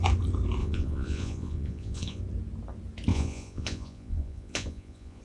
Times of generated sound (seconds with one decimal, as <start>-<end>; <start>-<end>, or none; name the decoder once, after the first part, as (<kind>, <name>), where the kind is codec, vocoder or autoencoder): 0.6-2.2 (vocoder, Vocos); 3.1-5.2